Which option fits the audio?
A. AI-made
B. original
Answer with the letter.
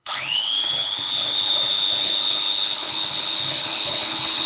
A